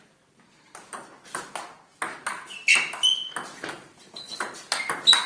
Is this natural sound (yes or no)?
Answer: yes